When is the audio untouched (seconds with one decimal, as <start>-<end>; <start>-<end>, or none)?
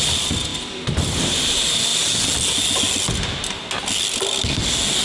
0.0-5.0